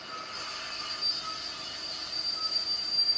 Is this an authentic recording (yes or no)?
yes